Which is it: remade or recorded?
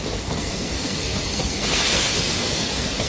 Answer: remade